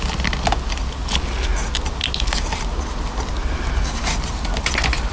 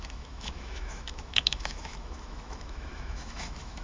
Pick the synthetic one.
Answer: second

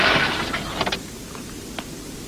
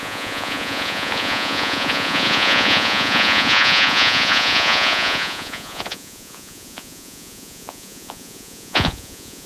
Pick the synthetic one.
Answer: second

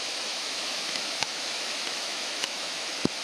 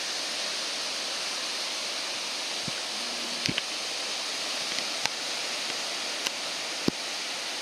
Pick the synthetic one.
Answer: first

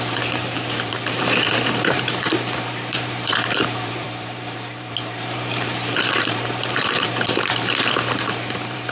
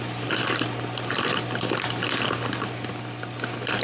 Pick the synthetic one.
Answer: first